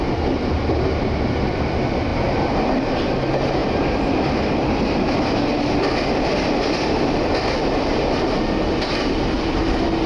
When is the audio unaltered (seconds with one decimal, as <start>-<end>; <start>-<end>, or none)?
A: 0.0-10.1